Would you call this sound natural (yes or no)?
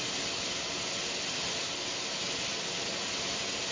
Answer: yes